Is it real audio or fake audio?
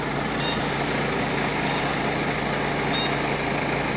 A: real